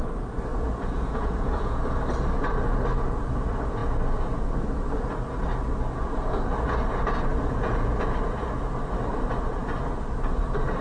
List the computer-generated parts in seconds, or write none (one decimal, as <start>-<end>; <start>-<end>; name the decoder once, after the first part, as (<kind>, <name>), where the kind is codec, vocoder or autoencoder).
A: 0.5-1.8 (vocoder, Vocos); 7.3-8.0